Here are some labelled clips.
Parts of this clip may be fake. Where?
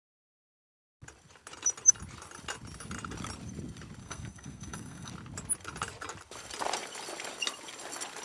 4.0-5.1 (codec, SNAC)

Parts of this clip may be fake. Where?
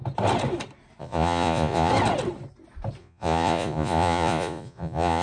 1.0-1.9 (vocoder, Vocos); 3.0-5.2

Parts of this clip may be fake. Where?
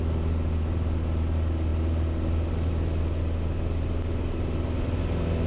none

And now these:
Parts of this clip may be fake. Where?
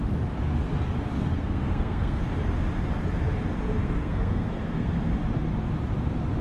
1.2-2.2 (codec, SNAC); 3.8-4.9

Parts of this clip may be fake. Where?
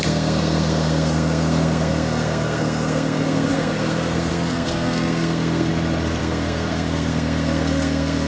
0.0-5.7 (codec, SNAC); 6.2-8.3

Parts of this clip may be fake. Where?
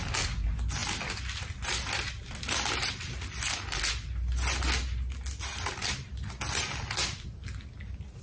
none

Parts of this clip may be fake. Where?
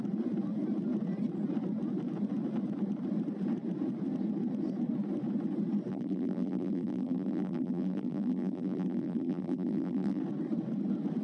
5.9-10.2 (vocoder, BigVGAN v2)